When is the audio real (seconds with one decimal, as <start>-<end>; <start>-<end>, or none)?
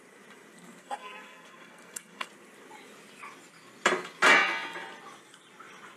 0.0-0.8; 2.3-6.0